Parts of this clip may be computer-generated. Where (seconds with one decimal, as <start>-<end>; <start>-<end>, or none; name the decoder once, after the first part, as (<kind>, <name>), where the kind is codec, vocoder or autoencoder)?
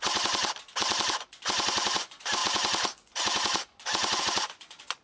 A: 0.0-0.4 (vocoder, Vocos); 1.1-5.0